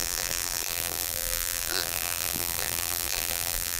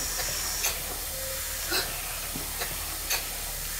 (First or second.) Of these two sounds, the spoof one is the first